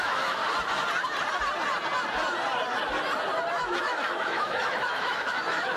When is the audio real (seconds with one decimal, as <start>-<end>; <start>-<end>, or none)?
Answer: 0.4-3.5